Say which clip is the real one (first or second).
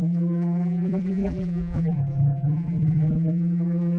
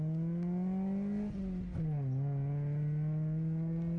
second